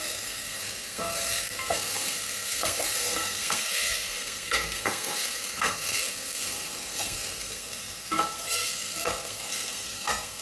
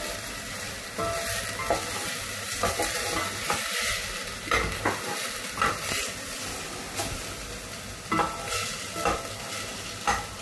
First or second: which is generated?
first